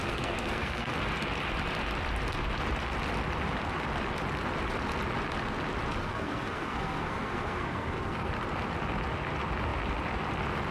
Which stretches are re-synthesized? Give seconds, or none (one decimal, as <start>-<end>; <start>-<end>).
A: 0.0-0.9; 6.0-8.3